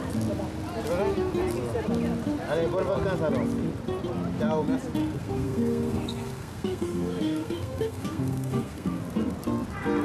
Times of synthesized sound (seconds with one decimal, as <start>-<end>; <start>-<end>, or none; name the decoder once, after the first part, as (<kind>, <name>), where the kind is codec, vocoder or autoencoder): 5.0-9.0 (codec, SNAC)